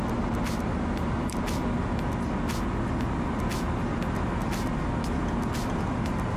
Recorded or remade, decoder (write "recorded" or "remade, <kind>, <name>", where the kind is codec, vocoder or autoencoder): recorded